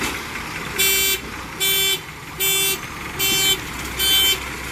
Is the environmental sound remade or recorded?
recorded